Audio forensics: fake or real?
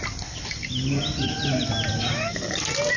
real